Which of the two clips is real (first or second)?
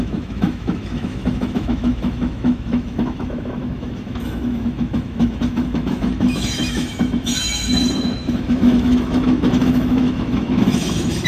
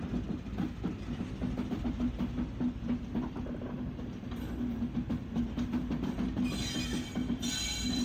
second